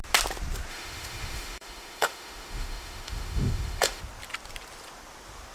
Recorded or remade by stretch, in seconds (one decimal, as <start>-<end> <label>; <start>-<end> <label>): 0.0-0.7 recorded; 0.7-4.0 remade; 4.0-5.5 recorded